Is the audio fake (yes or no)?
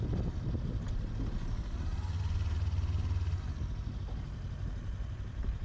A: no